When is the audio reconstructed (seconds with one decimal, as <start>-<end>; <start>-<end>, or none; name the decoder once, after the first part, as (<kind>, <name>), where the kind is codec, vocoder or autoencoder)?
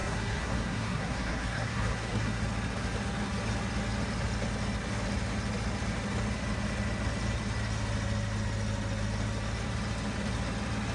0.0-2.4 (codec, SNAC)